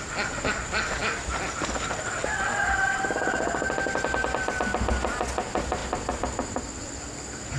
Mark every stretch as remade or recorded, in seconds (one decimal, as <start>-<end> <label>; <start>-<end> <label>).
0.0-7.6 recorded